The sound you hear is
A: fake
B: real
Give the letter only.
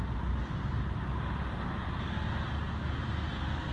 B